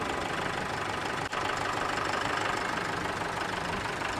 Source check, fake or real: real